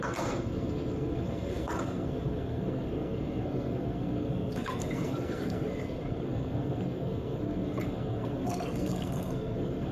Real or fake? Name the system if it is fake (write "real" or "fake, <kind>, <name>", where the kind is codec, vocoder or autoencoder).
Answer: fake, codec, SNAC